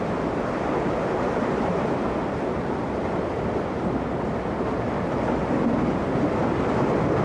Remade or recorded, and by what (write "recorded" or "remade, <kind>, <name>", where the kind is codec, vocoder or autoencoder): recorded